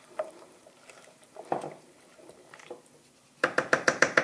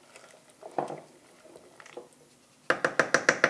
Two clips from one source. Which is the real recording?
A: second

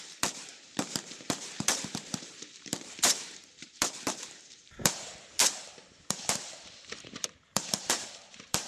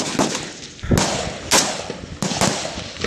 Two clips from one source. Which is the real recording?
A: second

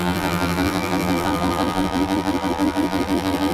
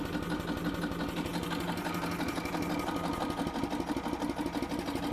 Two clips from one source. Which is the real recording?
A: second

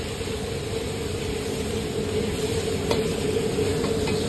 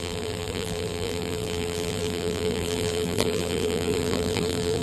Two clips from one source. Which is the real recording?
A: first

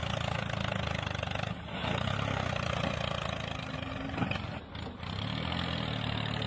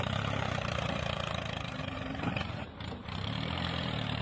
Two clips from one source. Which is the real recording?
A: first